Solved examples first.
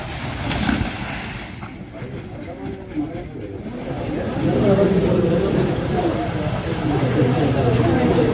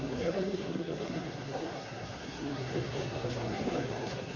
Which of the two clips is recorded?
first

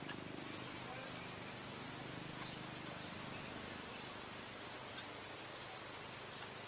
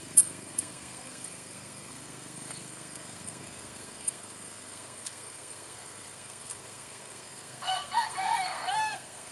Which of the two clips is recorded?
first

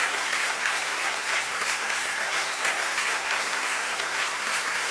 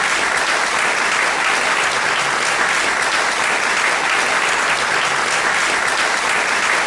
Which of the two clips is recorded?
second